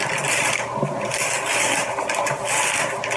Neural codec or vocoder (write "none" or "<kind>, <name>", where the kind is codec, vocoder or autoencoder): none